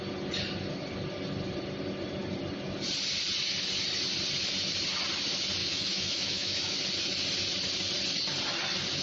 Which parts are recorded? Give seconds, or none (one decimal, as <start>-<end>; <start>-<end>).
0.0-5.6; 6.8-9.0